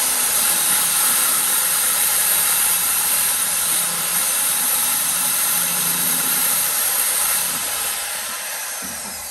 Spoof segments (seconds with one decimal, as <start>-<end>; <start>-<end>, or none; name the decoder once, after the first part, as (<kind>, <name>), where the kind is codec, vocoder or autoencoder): 0.0-9.3 (vocoder, BigVGAN v2)